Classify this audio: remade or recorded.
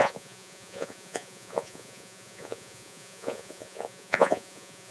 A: remade